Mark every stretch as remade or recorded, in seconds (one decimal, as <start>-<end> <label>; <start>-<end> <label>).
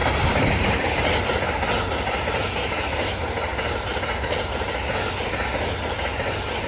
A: 0.0-0.8 remade; 0.8-6.7 recorded